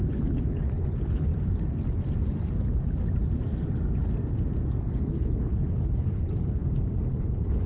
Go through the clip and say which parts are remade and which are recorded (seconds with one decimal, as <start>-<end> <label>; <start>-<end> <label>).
0.0-1.3 remade; 1.3-4.8 recorded; 4.8-6.6 remade; 6.6-7.1 recorded; 7.1-7.7 remade